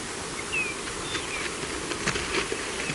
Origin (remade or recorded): recorded